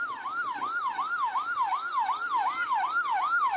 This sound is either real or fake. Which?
real